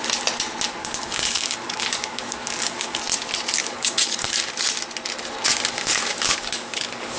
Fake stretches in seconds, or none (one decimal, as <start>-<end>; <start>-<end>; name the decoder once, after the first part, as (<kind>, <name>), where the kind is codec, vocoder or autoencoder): 0.8-3.0 (codec, DAC); 3.6-4.5; 5.5-7.2